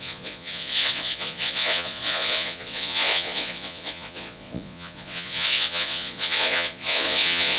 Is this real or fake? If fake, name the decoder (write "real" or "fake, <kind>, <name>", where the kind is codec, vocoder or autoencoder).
fake, vocoder, Vocos